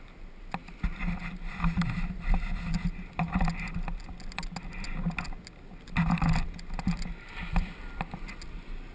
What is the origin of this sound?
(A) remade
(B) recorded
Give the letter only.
B